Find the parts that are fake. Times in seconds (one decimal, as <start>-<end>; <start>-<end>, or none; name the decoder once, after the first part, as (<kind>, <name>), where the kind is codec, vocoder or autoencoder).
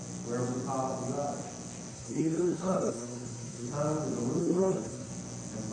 1.9-3.7 (codec, SNAC); 4.4-5.1